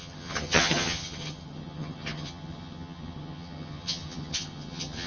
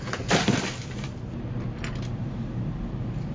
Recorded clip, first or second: second